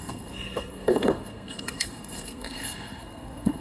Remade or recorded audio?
remade